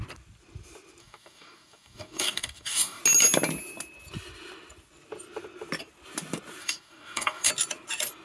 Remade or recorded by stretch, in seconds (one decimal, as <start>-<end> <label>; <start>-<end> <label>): 0.0-1.0 recorded; 1.0-3.0 remade; 3.0-6.6 recorded; 6.6-7.5 remade; 7.5-8.2 recorded